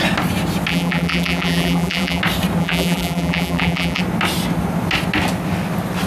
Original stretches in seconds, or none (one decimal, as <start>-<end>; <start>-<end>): 0.0-0.7; 2.2-2.6; 4.0-6.1